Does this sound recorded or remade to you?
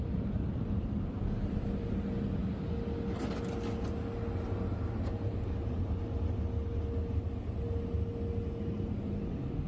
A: recorded